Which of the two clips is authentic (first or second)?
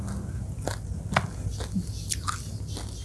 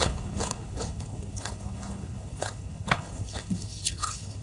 first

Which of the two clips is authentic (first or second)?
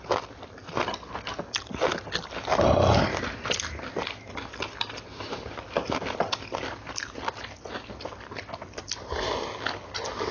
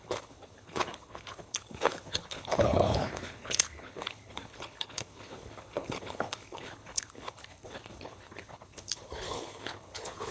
first